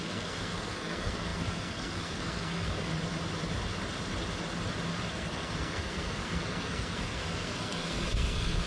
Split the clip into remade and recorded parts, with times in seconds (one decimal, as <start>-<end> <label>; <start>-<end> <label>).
0.0-2.9 remade; 2.9-5.1 recorded; 5.1-8.7 remade